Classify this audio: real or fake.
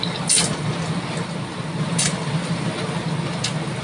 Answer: real